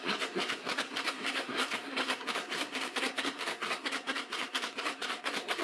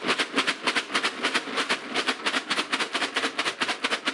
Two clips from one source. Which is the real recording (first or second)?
second